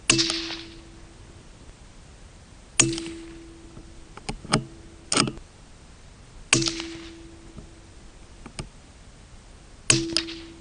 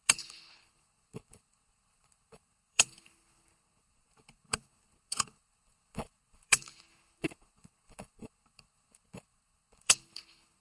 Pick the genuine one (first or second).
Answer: first